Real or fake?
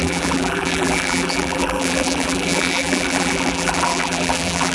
fake